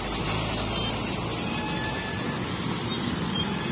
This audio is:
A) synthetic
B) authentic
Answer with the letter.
B